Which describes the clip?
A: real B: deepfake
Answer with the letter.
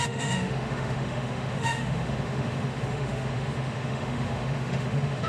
B